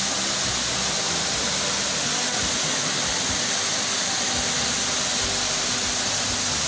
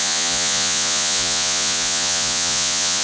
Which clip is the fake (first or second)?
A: second